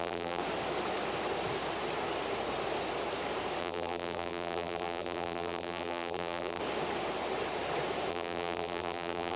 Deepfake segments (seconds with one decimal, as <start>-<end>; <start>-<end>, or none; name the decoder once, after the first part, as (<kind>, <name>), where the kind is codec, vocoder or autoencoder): 0.0-0.4 (vocoder, BigVGAN v2); 3.6-6.6; 8.1-9.4